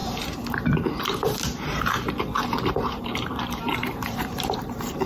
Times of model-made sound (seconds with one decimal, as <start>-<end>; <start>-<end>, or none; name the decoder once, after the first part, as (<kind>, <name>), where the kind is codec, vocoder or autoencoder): 0.0-5.1 (vocoder, BigVGAN v2)